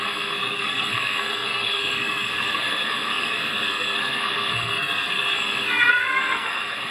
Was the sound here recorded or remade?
remade